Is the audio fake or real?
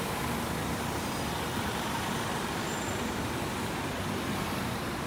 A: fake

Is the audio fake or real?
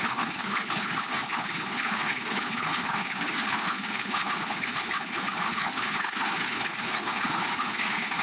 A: fake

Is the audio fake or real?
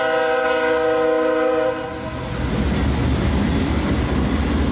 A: real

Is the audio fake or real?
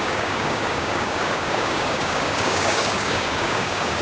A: fake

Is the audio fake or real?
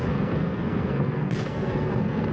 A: fake